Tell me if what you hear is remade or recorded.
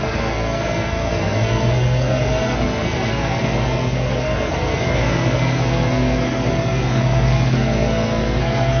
remade